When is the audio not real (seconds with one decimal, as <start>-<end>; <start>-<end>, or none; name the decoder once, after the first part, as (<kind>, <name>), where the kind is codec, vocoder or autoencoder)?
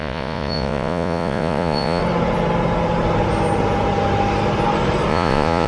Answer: 0.0-2.0 (vocoder, Vocos); 5.1-5.7